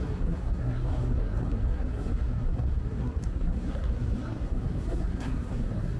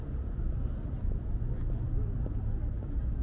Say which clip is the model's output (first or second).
first